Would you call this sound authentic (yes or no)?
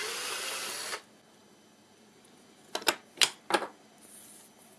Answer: yes